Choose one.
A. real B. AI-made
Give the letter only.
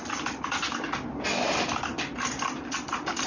A